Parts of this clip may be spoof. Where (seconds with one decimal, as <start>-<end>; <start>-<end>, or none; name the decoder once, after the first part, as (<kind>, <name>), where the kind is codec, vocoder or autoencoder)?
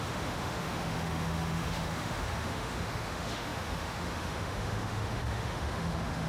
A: 0.0-6.3 (autoencoder, DAC-VAE)